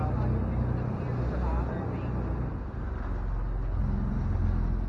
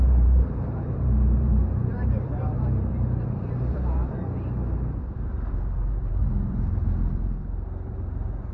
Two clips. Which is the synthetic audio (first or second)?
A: second